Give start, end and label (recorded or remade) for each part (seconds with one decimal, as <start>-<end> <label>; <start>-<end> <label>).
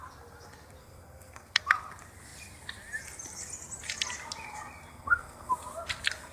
0.0-0.8 recorded; 0.8-1.6 remade; 1.6-4.9 recorded; 4.9-5.5 remade; 5.5-6.3 recorded